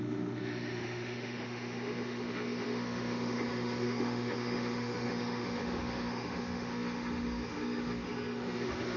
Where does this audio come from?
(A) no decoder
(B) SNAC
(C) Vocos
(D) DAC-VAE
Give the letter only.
D